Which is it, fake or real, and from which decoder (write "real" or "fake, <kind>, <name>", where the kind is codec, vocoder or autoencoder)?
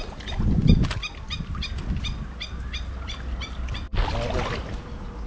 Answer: real